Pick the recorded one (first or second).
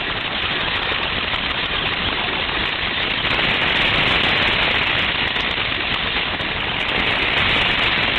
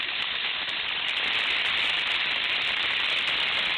first